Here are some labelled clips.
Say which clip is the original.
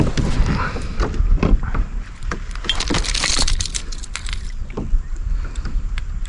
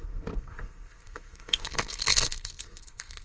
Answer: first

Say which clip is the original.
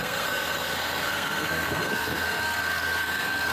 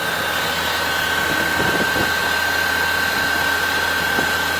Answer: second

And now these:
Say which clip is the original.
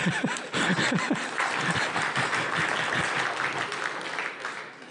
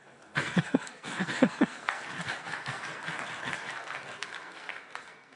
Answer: first